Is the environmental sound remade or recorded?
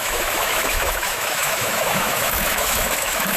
remade